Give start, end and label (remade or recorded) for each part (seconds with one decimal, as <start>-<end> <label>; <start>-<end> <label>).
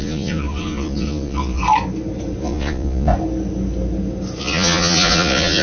0.0-1.6 remade; 1.6-2.4 recorded; 2.4-3.1 remade; 3.1-4.4 recorded; 4.4-5.6 remade